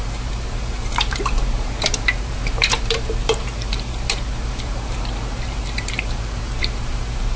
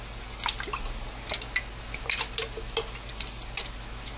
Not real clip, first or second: first